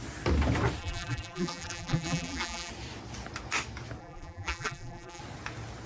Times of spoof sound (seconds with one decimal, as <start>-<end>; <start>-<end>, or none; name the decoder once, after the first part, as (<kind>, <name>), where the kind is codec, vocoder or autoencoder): 0.8-2.7 (vocoder, BigVGAN v2); 4.0-5.2